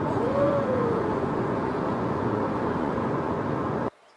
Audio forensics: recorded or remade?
remade